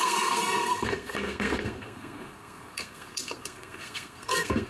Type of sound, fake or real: fake